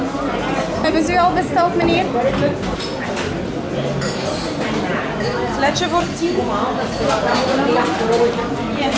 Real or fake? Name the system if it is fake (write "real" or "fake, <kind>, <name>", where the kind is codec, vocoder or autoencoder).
real